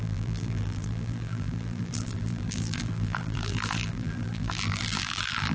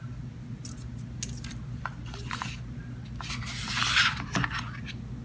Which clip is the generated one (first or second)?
first